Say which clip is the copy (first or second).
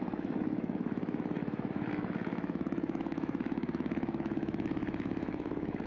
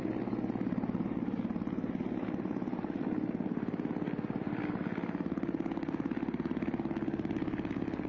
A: first